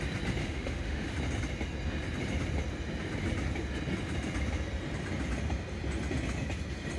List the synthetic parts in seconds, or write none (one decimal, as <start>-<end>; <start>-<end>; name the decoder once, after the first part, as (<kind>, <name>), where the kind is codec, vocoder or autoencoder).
0.4-1.1 (autoencoder, DAC-VAE)